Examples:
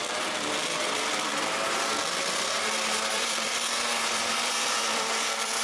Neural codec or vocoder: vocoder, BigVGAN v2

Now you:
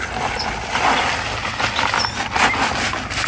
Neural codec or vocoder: none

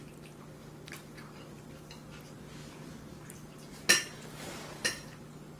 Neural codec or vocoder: none